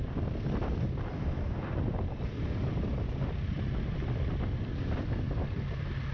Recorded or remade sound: recorded